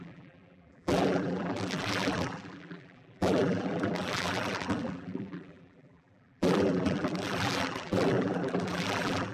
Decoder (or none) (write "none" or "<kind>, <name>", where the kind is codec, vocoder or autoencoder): vocoder, BigVGAN v2